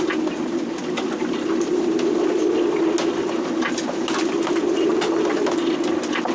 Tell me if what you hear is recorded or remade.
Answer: recorded